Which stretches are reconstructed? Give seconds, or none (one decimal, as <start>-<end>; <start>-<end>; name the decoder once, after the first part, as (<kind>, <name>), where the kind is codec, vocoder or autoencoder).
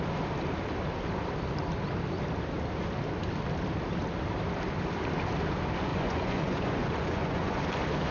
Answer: 5.9-7.6 (vocoder, Vocos)